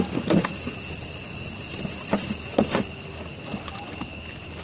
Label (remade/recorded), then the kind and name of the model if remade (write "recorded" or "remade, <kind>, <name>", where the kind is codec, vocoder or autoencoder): recorded